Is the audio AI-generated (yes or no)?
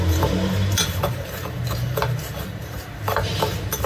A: yes